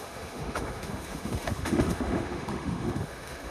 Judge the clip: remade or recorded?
remade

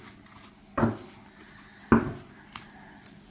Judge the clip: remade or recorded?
recorded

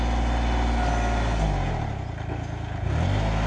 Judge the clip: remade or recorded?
recorded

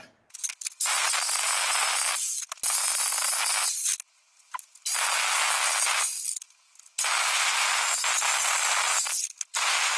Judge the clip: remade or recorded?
recorded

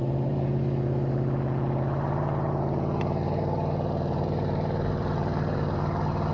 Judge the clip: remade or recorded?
remade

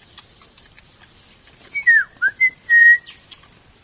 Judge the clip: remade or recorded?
recorded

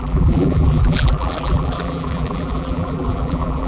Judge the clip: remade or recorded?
remade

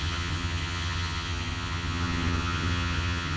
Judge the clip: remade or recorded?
remade